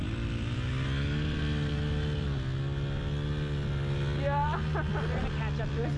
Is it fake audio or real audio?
real